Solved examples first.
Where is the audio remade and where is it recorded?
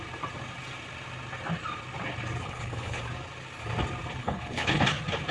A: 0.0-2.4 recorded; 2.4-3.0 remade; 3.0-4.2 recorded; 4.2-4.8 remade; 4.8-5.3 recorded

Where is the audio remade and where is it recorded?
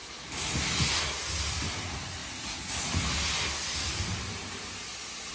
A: 0.0-5.3 recorded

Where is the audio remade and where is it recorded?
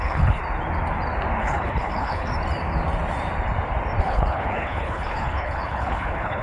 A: 0.0-0.4 remade; 0.4-1.4 recorded; 1.4-2.3 remade; 2.3-4.0 recorded; 4.0-6.4 remade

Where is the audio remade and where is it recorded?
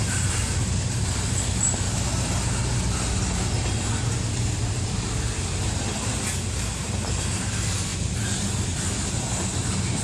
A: 0.0-10.0 recorded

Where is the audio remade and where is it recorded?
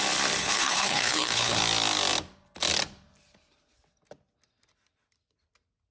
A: 0.0-0.4 recorded; 0.4-1.6 remade; 1.6-5.9 recorded